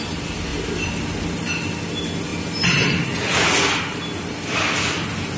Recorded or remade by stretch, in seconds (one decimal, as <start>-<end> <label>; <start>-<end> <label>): 0.0-5.4 recorded